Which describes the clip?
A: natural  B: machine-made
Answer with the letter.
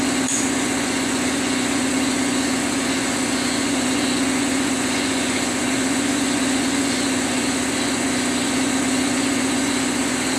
B